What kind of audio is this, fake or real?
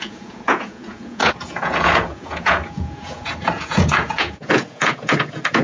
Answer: fake